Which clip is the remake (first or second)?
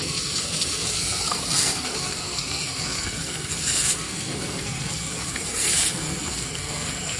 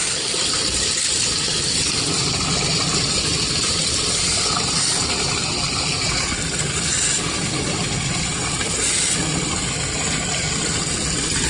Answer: first